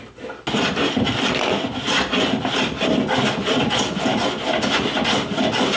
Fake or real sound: real